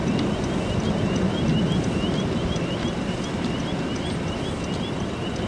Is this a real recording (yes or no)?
yes